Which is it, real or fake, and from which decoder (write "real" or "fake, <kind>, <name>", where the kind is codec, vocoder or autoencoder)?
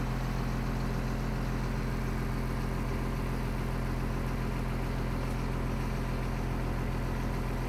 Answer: real